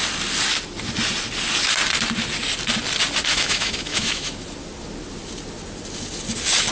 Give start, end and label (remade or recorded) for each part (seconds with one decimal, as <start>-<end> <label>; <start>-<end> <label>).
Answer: 0.0-3.3 recorded; 3.3-4.3 remade; 4.3-6.7 recorded